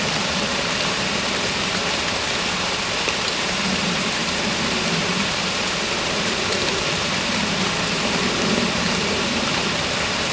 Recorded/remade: remade